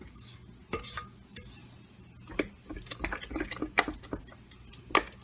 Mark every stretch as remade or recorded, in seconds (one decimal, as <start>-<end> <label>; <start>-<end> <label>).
0.0-5.2 recorded